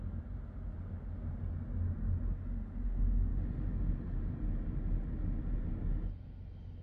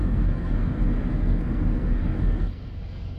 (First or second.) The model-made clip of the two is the second